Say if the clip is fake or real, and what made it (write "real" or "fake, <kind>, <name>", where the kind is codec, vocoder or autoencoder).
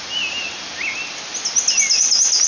real